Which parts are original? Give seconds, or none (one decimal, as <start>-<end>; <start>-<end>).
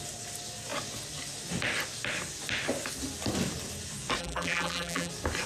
0.0-4.2; 5.1-5.5